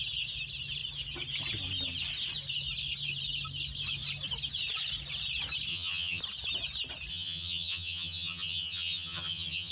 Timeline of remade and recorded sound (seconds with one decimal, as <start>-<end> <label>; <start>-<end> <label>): 0.0-5.7 recorded; 5.7-6.2 remade; 6.2-7.1 recorded; 7.1-9.7 remade